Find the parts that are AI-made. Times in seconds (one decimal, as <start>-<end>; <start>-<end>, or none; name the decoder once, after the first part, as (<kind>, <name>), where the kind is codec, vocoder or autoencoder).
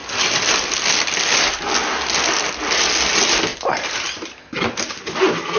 3.5-4.1 (vocoder, BigVGAN v2)